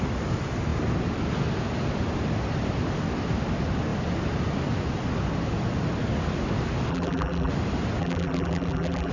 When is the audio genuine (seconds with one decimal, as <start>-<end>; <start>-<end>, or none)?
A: 0.0-6.9; 7.5-8.0